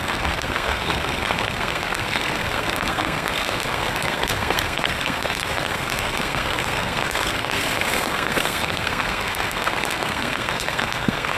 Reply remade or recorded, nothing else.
remade